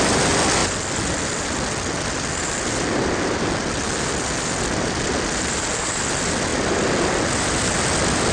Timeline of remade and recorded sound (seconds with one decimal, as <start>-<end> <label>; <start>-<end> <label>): 0.0-8.3 recorded